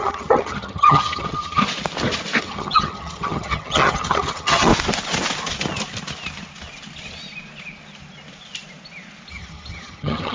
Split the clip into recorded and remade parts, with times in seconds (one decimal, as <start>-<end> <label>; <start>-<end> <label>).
0.0-1.6 remade; 1.6-2.4 recorded; 2.4-4.7 remade; 4.7-9.3 recorded; 9.3-10.3 remade